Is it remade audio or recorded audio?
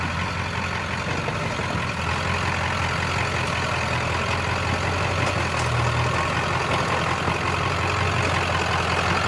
recorded